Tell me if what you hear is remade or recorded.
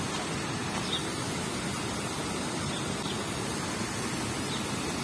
recorded